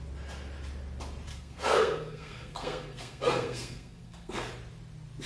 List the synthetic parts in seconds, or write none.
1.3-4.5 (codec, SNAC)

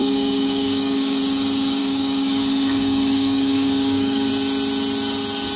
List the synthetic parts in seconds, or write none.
0.0-1.2 (codec, DAC); 1.8-4.3

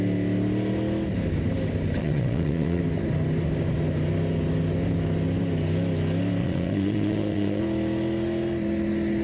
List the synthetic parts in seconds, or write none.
2.0-2.8 (vocoder, WaveNeXt); 6.4-7.6

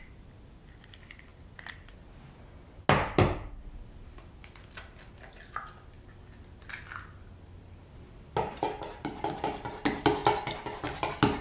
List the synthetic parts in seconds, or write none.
none